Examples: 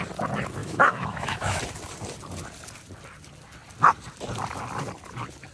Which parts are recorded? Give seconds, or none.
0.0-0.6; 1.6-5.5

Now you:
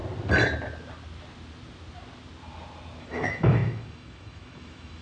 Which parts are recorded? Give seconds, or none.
0.0-3.0